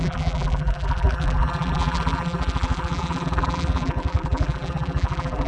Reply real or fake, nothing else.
fake